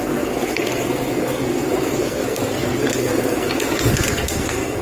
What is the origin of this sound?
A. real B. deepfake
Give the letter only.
B